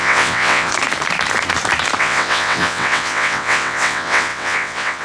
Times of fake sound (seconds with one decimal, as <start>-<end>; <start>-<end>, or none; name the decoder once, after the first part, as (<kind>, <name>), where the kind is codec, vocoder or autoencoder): 0.0-0.7 (vocoder, WaveNeXt); 2.0-5.0